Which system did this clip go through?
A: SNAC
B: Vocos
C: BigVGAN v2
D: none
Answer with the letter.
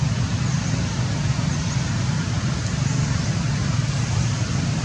D